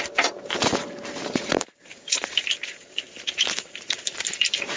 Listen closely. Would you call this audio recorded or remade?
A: remade